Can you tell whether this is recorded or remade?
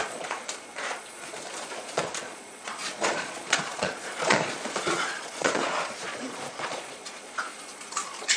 remade